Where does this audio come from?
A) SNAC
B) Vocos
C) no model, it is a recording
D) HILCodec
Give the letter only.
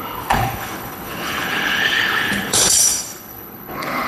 D